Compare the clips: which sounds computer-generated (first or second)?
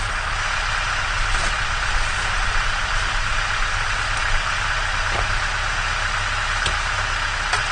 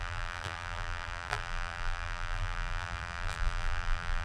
second